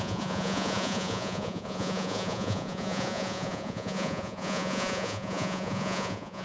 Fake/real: fake